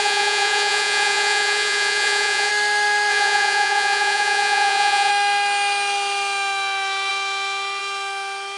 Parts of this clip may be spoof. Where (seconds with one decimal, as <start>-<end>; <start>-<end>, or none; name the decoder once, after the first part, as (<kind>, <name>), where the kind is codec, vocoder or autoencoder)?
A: 0.0-2.5 (vocoder, Vocos); 3.1-5.1